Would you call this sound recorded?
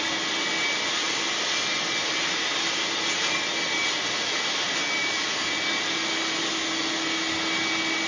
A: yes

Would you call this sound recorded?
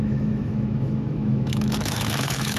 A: no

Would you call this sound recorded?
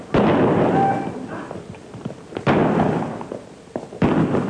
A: yes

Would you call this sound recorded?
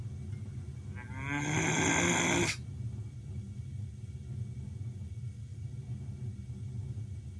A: yes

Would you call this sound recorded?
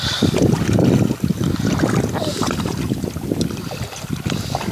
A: yes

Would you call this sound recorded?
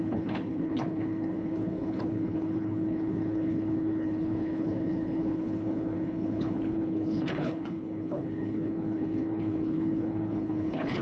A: no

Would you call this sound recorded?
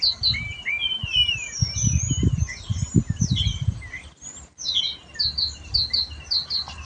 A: yes